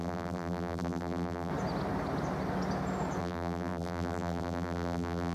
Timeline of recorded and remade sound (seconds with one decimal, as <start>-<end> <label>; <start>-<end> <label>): 0.0-1.5 remade; 1.5-3.2 recorded; 3.2-5.3 remade